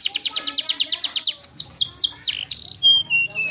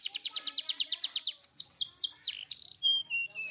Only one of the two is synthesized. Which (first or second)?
second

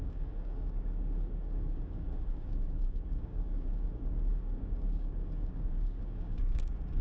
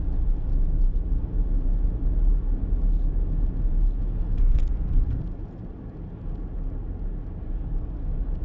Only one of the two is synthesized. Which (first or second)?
first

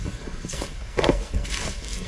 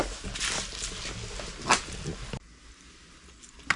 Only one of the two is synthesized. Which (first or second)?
first